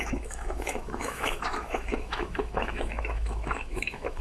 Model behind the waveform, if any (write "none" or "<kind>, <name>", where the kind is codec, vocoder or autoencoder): autoencoder, DAC-VAE